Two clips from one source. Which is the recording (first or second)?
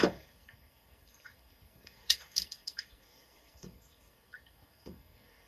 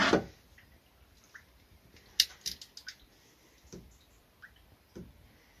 second